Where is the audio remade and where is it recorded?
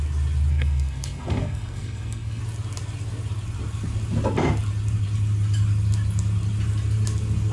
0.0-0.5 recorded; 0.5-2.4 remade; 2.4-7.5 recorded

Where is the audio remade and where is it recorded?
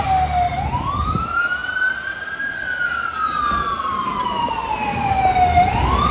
0.0-6.1 recorded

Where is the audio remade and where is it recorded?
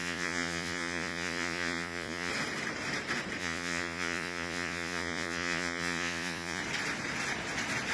0.0-2.3 remade; 2.3-3.4 recorded; 3.4-6.6 remade; 6.6-7.9 recorded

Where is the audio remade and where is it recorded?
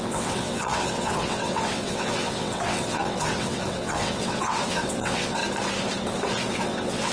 0.0-5.4 remade; 5.4-6.5 recorded; 6.5-7.1 remade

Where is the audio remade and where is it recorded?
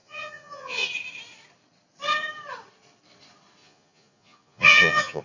0.0-0.9 remade; 0.9-3.6 recorded; 3.6-5.2 remade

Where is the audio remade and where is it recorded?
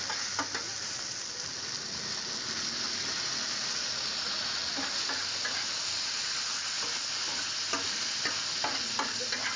0.0-9.6 recorded